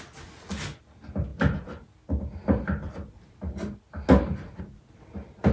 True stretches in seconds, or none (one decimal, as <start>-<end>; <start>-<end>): 0.0-5.5